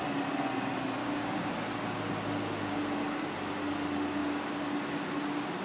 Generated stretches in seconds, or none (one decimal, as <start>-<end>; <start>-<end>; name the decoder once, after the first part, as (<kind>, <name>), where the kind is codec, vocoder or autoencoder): 1.0-1.5 (codec, DAC)